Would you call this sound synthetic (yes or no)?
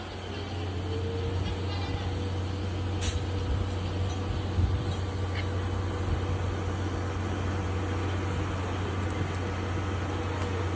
no